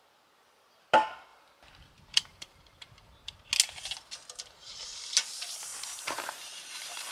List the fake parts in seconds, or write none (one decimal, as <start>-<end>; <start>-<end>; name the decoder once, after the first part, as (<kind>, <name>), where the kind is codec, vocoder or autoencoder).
1.3-3.4 (vocoder, BigVGAN v2); 5.7-7.1